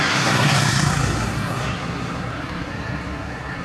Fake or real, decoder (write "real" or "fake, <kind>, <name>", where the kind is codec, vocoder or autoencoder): fake, codec, SNAC